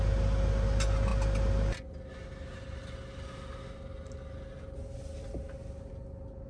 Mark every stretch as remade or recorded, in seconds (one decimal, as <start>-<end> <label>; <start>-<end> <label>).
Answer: 0.0-6.5 recorded